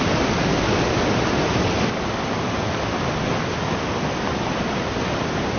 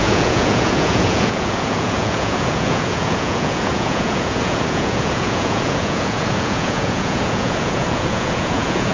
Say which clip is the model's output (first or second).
second